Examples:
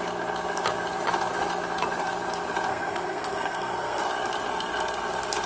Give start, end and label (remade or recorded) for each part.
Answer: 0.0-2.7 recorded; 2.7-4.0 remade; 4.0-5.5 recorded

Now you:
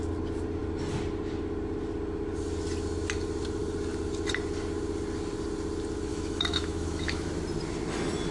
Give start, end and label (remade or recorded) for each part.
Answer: 0.0-6.1 recorded; 6.1-7.3 remade; 7.3-8.3 recorded

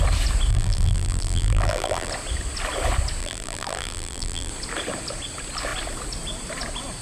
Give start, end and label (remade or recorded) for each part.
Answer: 0.0-0.5 recorded; 0.5-2.1 remade; 2.1-3.2 recorded; 3.2-4.5 remade; 4.5-7.0 recorded

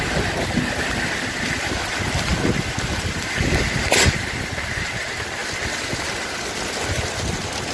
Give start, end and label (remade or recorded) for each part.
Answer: 0.0-7.7 recorded

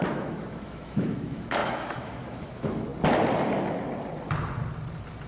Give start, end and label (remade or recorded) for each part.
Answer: 0.0-2.9 remade; 2.9-5.3 recorded

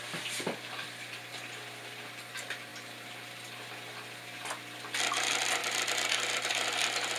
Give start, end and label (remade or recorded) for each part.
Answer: 0.0-5.6 remade; 5.6-6.5 recorded; 6.5-7.2 remade